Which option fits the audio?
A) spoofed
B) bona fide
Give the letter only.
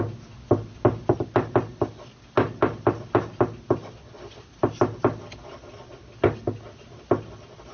B